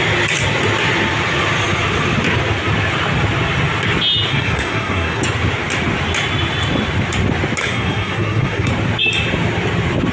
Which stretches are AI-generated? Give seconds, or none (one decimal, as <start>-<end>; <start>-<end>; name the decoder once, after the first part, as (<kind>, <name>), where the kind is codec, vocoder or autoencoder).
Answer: 4.3-5.2 (codec, SNAC); 7.6-8.7